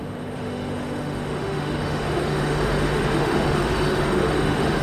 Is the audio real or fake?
fake